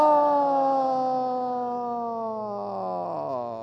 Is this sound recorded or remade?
recorded